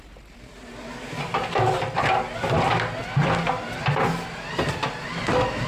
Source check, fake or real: real